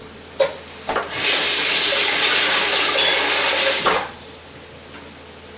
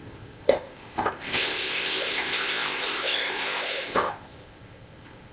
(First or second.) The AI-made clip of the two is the second